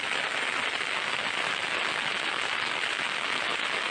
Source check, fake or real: real